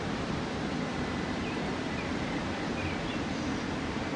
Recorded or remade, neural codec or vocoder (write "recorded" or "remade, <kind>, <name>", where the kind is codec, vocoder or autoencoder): recorded